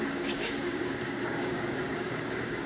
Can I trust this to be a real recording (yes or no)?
no